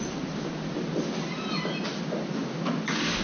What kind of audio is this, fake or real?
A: real